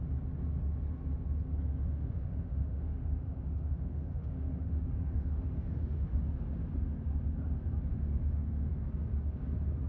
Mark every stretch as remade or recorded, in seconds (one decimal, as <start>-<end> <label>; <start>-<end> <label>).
0.0-1.7 recorded; 1.7-6.2 remade; 6.2-7.9 recorded; 7.9-8.7 remade; 8.7-9.9 recorded